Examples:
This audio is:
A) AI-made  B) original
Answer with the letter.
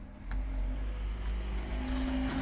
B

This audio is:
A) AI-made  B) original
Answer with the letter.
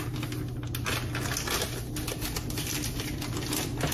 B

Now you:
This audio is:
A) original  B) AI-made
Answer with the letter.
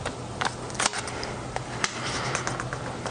A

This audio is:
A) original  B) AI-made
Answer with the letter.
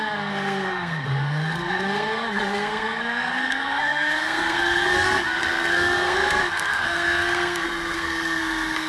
B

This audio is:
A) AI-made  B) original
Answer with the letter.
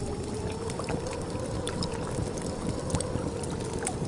B